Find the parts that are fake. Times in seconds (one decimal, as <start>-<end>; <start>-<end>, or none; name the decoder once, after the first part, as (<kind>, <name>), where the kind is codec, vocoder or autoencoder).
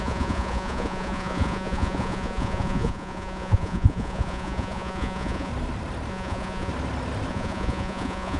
0.0-5.5 (vocoder, Vocos); 6.1-6.7; 7.3-8.4